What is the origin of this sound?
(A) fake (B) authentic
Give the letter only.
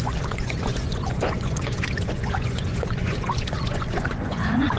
A